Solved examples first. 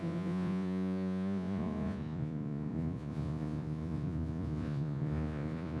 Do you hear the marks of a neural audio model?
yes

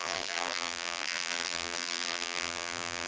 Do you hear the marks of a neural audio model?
yes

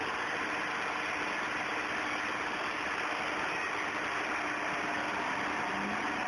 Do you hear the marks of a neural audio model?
no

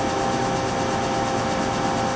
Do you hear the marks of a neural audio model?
no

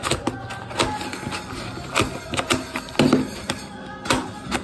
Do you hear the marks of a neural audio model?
no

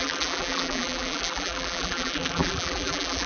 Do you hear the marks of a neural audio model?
yes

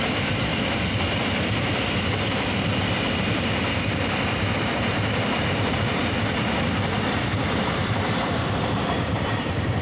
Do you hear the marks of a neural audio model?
yes